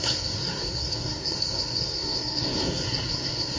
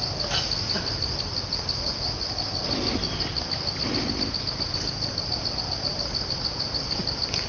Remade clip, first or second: first